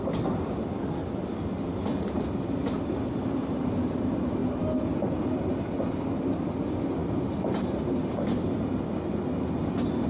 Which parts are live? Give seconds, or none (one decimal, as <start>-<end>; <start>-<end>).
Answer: 0.0-10.1